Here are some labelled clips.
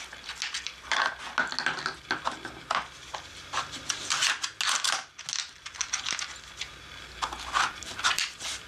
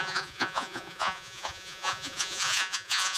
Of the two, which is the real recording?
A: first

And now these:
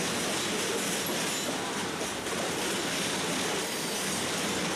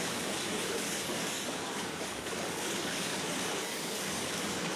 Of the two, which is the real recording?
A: first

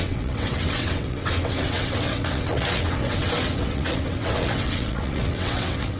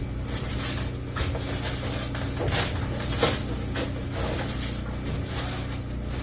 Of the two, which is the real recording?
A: second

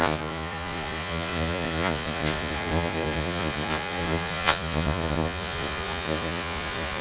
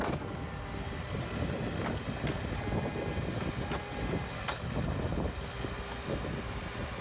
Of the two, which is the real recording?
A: second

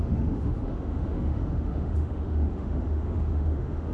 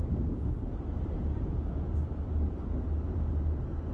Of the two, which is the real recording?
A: second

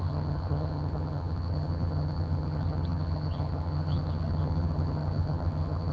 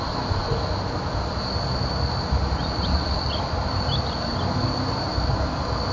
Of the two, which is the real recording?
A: second